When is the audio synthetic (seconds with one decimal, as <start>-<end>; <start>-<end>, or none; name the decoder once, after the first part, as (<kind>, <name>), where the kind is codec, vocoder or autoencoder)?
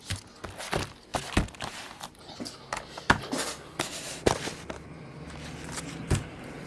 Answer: 1.1-4.5 (vocoder, BigVGAN v2)